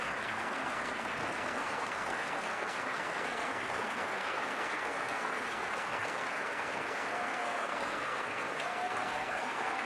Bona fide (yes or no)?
no